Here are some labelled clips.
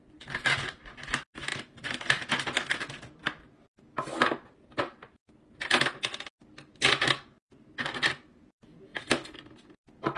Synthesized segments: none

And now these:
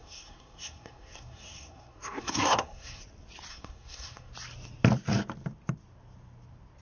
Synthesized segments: 0.0-3.0 (codec, SNAC); 3.5-4.3

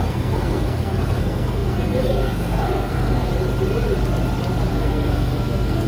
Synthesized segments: 0.0-3.3 (codec, SNAC); 4.7-5.9

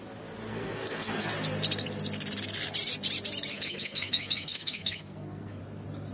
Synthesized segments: 0.5-1.3 (codec, SNAC); 3.5-5.6

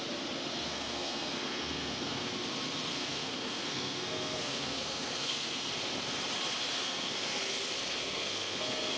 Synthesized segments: 0.7-2.3 (codec, SNAC); 2.9-5.7; 6.8-7.4; 8.0-9.0

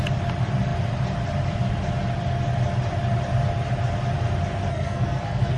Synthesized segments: 4.7-5.6 (codec, SNAC)

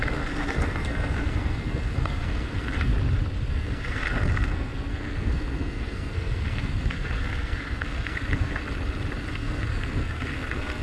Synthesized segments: 0.0-2.9 (codec, SNAC); 3.5-8.6; 9.3-10.8

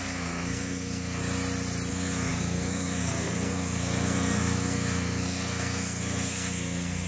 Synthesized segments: 0.0-1.2 (codec, SNAC); 1.9-7.1